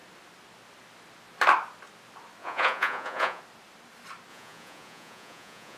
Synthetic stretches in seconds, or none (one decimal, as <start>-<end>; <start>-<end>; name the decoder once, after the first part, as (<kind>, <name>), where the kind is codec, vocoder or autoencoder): 2.4-3.4 (vocoder, Vocos); 4.3-5.8